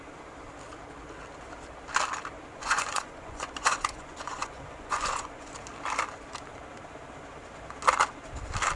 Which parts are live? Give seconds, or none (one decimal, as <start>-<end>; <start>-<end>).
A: 0.0-2.5; 5.5-8.8